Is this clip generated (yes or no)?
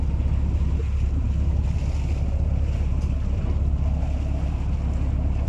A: no